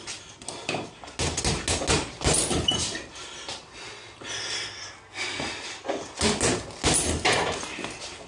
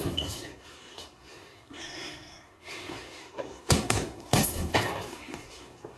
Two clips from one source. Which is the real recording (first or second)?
first